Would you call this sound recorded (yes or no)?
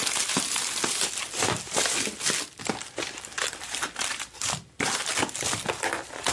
no